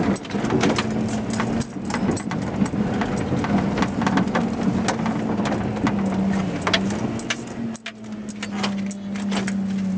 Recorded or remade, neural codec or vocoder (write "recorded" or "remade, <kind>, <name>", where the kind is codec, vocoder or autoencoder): recorded